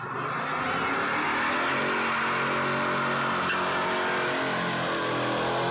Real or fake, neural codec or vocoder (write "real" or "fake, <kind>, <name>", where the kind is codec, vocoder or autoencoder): real